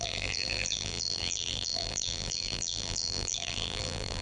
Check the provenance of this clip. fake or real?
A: fake